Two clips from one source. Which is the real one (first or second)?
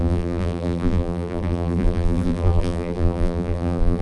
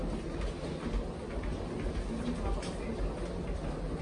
second